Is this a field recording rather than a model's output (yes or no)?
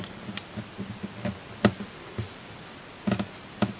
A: yes